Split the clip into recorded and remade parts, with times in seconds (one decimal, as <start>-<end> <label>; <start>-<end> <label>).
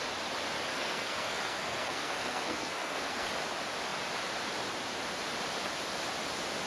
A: 0.0-0.7 recorded; 0.7-3.3 remade; 3.3-6.7 recorded